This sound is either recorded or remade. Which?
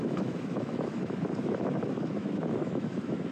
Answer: remade